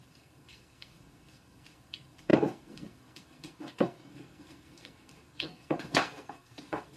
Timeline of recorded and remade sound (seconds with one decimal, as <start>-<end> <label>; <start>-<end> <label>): 0.0-7.0 remade